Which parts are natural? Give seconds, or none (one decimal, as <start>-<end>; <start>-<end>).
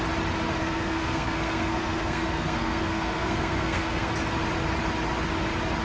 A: 0.0-0.6; 4.1-5.8